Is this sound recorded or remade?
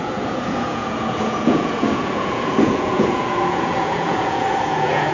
remade